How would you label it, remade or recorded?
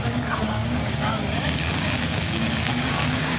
remade